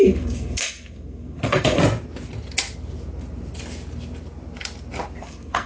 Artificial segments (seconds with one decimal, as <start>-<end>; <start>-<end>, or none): 0.0-1.8; 5.2-5.7

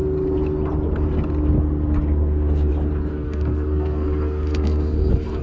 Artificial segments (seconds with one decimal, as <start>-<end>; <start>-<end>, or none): 3.1-5.4